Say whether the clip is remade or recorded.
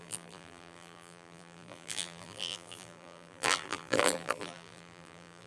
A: remade